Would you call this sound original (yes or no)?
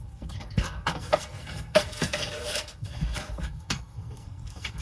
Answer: no